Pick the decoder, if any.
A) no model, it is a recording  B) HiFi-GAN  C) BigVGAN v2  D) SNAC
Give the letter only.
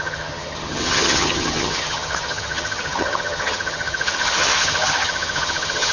B